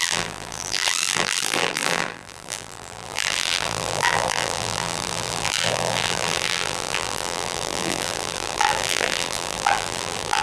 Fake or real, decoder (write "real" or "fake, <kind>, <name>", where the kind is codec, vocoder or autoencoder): fake, vocoder, BigVGAN v2